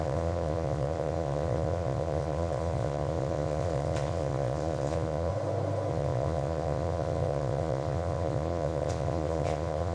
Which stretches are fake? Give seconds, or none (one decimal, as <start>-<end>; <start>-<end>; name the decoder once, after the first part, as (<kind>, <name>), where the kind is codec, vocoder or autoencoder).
0.0-5.3 (vocoder, Vocos); 5.9-9.9